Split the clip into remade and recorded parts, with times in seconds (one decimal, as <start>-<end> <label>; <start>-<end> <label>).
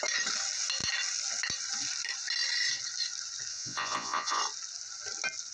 0.0-3.5 recorded; 3.5-4.4 remade; 4.4-5.5 recorded